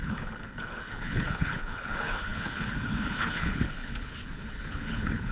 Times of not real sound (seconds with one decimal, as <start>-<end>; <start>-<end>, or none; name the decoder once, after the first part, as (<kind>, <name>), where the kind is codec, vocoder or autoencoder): 0.0-5.3 (codec, HILCodec)